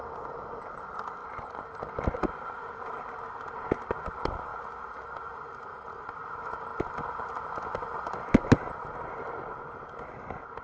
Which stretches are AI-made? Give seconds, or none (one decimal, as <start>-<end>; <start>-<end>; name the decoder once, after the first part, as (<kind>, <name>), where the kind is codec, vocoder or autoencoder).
0.0-1.2 (vocoder, BigVGAN v2); 1.9-4.5; 5.9-6.7; 9.1-10.6